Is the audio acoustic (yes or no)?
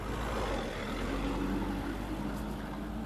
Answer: yes